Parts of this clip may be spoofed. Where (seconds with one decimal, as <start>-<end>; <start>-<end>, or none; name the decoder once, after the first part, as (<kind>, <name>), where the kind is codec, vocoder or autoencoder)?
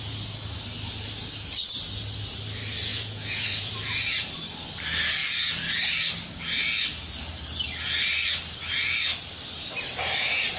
2.9-3.7 (vocoder, Vocos)